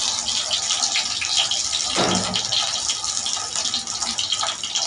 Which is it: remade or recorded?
recorded